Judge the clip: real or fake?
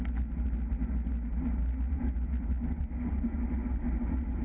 real